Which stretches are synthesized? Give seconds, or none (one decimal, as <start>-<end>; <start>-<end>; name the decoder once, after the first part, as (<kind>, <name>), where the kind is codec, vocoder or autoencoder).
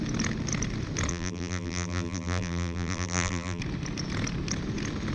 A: 1.1-3.6 (vocoder, BigVGAN v2)